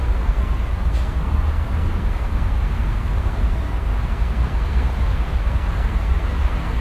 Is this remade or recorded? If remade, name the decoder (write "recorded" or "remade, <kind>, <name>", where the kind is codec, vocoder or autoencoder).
remade, codec, SNAC